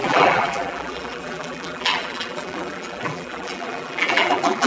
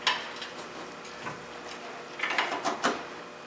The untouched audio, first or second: second